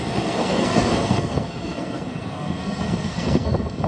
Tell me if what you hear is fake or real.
fake